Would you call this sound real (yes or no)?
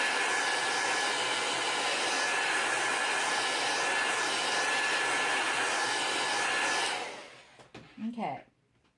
yes